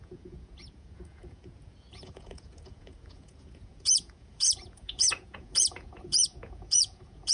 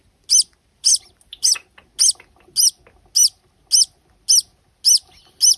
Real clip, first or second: second